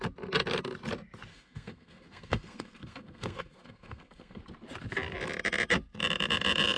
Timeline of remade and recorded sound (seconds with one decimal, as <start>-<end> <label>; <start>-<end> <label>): 0.0-1.3 recorded; 1.3-4.4 remade; 4.4-6.8 recorded